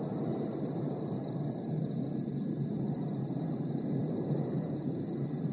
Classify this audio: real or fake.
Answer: real